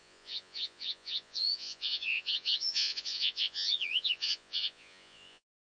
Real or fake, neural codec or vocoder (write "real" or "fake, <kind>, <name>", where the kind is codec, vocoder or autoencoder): fake, vocoder, Vocos